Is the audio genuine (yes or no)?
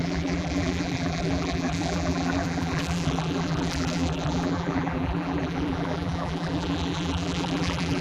no